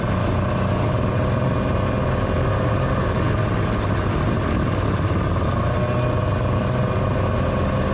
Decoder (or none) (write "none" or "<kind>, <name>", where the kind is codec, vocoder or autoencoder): none